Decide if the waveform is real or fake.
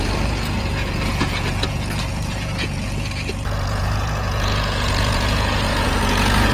fake